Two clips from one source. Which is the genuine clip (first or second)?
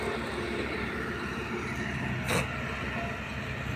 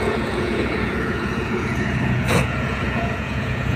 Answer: first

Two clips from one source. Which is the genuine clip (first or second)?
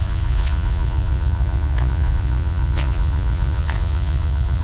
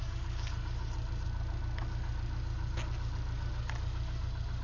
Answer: second